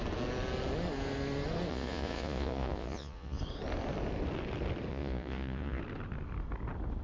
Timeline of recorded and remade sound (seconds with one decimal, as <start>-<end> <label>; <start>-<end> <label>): 0.0-1.7 recorded; 1.7-3.4 remade; 3.4-4.9 recorded; 4.9-5.8 remade; 5.8-7.0 recorded